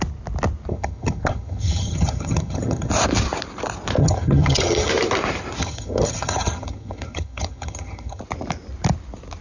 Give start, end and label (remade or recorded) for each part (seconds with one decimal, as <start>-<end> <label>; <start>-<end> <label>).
0.0-0.7 recorded; 0.7-2.9 remade; 2.9-4.0 recorded; 4.0-4.9 remade; 4.9-5.6 recorded; 5.6-8.2 remade; 8.2-9.4 recorded